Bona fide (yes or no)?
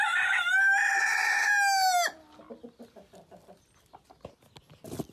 yes